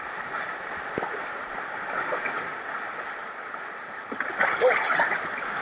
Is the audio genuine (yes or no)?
yes